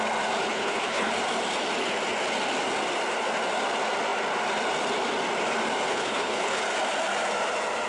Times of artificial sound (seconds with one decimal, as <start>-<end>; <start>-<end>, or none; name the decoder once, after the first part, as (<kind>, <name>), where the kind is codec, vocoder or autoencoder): 0.5-1.1 (codec, HILCodec); 5.9-6.6